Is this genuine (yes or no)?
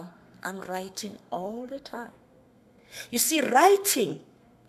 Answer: no